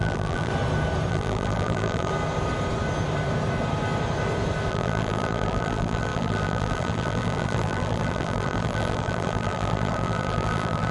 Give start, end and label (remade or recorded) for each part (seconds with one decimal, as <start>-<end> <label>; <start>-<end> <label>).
0.0-0.5 remade; 0.5-1.1 recorded; 1.1-2.1 remade; 2.1-4.7 recorded; 4.7-10.9 remade